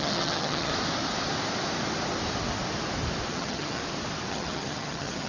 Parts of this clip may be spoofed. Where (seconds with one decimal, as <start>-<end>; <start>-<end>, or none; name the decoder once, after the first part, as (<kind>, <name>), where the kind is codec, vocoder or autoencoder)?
0.0-0.7 (vocoder, HiFi-GAN); 3.3-3.8; 4.3-5.3